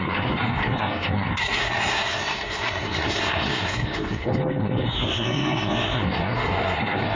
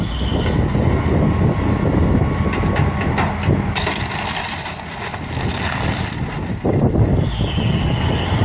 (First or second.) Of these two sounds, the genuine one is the second